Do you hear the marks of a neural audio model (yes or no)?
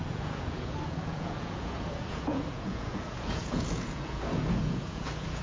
yes